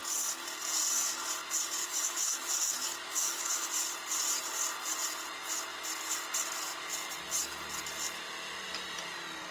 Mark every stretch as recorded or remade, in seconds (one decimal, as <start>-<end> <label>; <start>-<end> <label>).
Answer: 0.0-1.8 recorded; 1.8-3.7 remade; 3.7-9.5 recorded

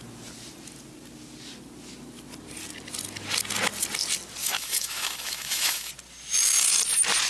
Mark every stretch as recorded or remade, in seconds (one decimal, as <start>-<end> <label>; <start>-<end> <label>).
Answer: 0.0-4.4 recorded; 4.4-5.9 remade; 5.9-7.3 recorded

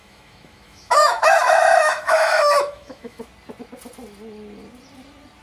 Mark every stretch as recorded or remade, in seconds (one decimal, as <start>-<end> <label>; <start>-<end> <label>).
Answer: 0.0-3.2 remade; 3.2-5.4 recorded